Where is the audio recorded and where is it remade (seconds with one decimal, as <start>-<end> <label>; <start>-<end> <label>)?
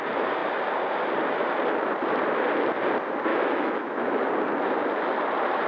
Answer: 0.0-3.3 recorded; 3.3-4.2 remade; 4.2-5.7 recorded